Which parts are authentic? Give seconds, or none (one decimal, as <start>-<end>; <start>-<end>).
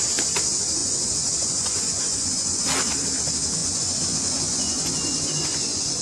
0.0-0.8; 2.7-3.6